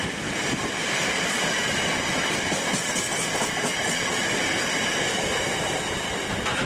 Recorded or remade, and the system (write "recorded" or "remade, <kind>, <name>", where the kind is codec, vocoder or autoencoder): recorded